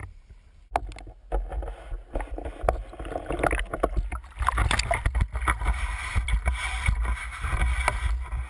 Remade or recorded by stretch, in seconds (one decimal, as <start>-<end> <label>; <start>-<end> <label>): 0.0-8.5 recorded